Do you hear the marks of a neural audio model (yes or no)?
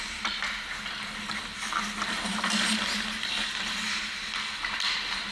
no